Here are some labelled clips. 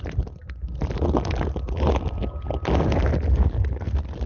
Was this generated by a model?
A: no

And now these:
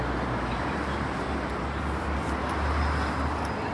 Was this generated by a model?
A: no